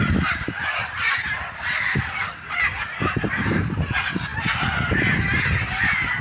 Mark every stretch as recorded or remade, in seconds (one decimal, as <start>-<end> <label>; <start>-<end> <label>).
0.0-6.2 recorded